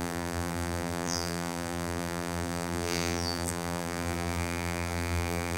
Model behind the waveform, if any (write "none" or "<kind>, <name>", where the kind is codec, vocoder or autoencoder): vocoder, BigVGAN v2